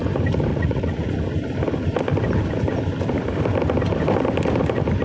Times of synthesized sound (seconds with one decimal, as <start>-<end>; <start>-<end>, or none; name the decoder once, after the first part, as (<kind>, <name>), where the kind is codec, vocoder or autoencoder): 0.5-1.1 (vocoder, Vocos)